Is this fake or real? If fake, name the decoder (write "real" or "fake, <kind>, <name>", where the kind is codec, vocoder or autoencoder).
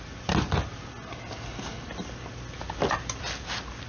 real